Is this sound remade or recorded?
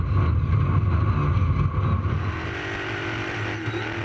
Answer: recorded